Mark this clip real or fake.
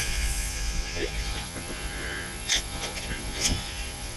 fake